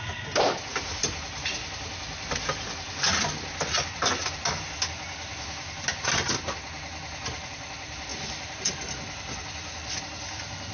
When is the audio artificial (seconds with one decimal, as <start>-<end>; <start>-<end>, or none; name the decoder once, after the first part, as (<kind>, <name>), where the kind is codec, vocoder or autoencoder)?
none